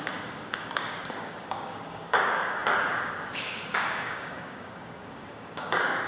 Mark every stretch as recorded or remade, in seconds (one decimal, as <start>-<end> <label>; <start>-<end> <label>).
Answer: 0.0-6.1 remade